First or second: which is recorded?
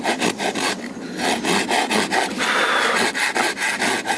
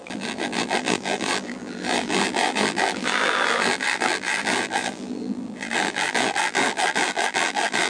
first